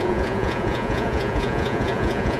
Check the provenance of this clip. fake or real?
fake